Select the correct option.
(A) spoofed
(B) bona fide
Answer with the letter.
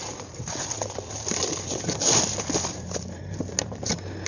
B